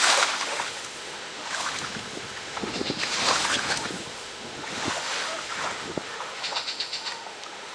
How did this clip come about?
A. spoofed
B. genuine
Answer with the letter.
A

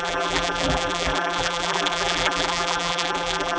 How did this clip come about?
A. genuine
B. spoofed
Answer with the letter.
B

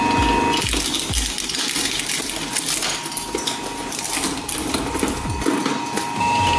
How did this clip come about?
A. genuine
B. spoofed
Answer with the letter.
A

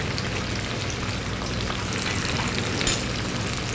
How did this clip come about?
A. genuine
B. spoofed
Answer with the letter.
A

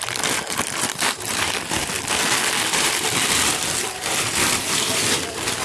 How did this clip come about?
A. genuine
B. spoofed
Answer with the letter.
B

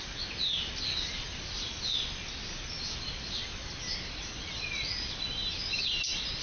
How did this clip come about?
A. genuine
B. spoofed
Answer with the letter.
A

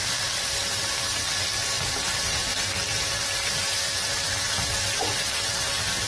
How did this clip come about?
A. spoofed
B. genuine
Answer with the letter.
A